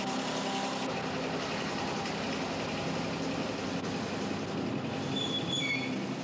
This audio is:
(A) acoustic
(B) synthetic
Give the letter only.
A